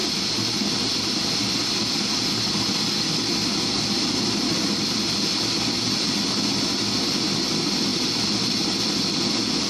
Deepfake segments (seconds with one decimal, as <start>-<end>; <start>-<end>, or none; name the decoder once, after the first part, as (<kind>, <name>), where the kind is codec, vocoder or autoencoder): 0.0-0.8 (vocoder, BigVGAN v2)